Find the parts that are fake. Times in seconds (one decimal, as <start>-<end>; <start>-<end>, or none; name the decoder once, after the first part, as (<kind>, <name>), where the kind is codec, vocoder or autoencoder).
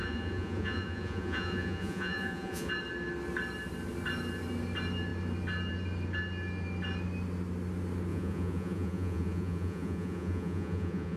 0.0-2.7 (vocoder, Vocos); 8.1-11.2